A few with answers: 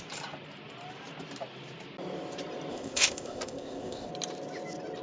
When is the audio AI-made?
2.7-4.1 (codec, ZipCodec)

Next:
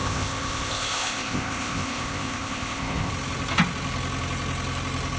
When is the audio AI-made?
0.0-3.1 (codec, ZipCodec)

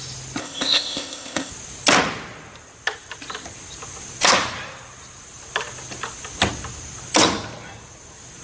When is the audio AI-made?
0.4-1.5 (codec, ZipCodec)

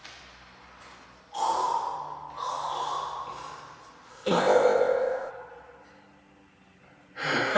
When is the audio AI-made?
4.1-5.3 (codec, ZipCodec)

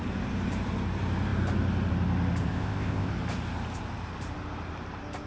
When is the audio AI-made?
2.4-3.1 (codec, ZipCodec)

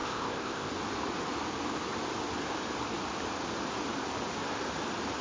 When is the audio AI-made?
0.0-0.7 (codec, ZipCodec)

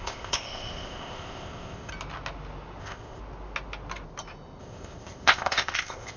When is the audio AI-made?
0.0-1.9 (codec, ZipCodec); 2.8-3.2; 4.6-6.2

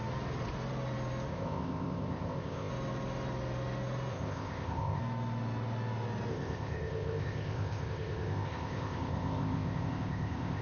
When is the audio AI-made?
1.3-2.7 (codec, ZipCodec); 4.1-5.0; 6.3-10.6